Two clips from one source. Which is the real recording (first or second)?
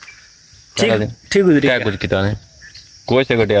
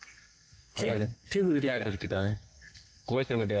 first